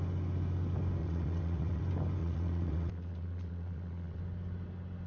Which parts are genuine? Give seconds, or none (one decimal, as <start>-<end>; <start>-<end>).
0.0-1.0; 1.8-2.2; 4.2-5.1